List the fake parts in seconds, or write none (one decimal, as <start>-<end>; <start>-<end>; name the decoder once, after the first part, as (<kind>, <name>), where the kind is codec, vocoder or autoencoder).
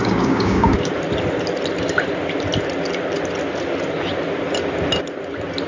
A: 0.0-0.9 (codec, DAC)